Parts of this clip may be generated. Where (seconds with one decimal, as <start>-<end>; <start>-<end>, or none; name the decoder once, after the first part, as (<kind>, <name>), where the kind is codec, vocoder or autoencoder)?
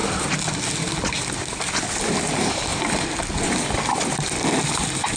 none